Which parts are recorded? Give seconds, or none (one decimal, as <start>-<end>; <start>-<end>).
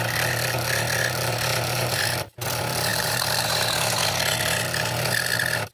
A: 0.0-1.5; 2.0-2.9; 4.0-5.7